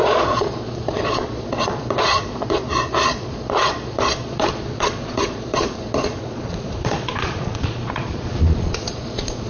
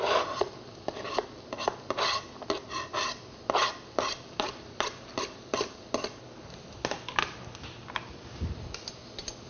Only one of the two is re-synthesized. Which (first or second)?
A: first